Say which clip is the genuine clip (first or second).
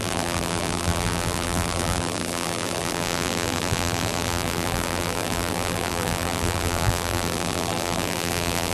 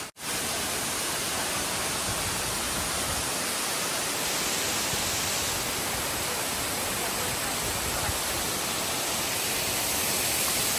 second